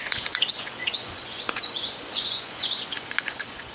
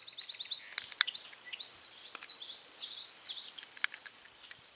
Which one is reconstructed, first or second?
first